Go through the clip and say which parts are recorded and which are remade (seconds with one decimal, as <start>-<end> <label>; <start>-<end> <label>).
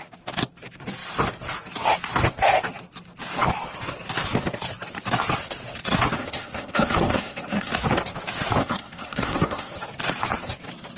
0.0-6.2 recorded; 6.2-7.7 remade; 7.7-8.6 recorded; 8.6-9.7 remade; 9.7-11.0 recorded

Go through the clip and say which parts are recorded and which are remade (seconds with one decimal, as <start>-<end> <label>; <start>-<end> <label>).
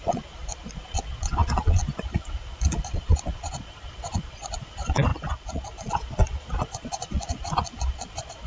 0.0-8.5 remade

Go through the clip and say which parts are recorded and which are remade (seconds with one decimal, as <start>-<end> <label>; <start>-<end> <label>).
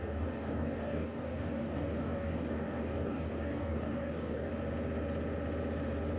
0.0-4.5 remade; 4.5-6.2 recorded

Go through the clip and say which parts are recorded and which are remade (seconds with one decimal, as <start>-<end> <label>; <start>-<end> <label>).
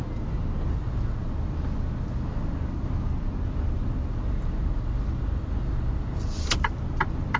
0.0-7.4 recorded